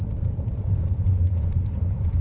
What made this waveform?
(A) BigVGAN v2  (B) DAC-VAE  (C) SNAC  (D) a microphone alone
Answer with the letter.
A